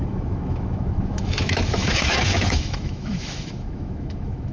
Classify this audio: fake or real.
fake